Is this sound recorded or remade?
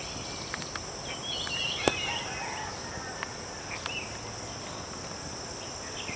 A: recorded